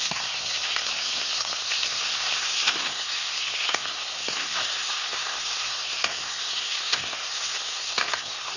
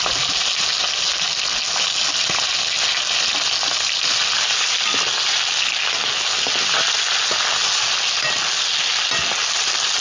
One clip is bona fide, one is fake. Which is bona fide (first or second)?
second